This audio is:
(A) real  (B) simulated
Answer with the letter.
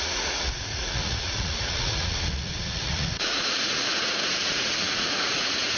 B